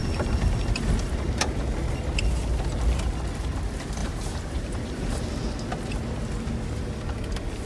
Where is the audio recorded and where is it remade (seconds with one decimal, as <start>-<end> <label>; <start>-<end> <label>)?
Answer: 0.0-1.7 remade; 1.7-4.0 recorded; 4.0-5.2 remade; 5.2-7.7 recorded